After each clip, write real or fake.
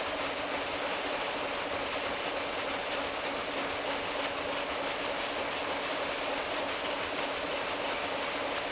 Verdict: real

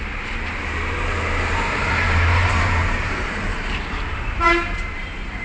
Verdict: fake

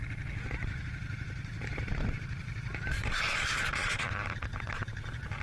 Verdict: fake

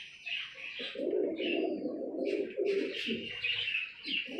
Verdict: real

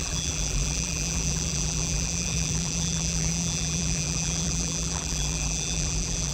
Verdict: fake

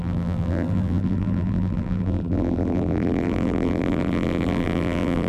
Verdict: fake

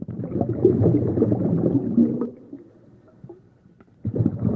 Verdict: real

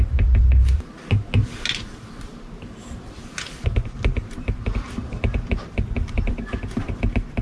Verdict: real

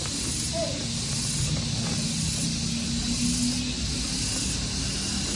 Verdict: real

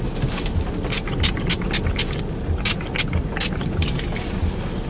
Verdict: real